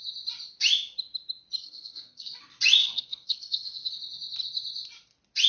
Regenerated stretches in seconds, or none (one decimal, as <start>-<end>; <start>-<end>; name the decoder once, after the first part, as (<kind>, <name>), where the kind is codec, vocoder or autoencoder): 1.6-2.4 (codec, SNAC); 2.8-3.9